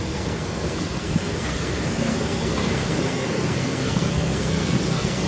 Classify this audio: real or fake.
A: fake